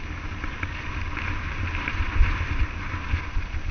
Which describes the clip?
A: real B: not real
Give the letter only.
A